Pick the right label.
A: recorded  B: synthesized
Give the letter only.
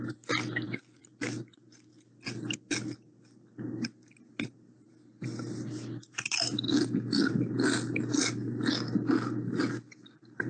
A